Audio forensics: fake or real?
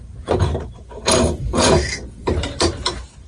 fake